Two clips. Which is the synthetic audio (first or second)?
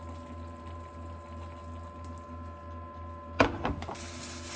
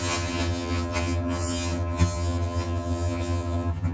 second